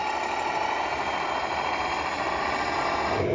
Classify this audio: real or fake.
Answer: real